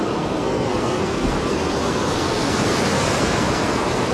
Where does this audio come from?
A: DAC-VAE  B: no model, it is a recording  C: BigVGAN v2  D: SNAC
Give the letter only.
D